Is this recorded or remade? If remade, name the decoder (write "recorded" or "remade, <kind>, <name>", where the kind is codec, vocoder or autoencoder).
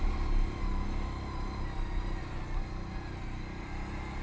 recorded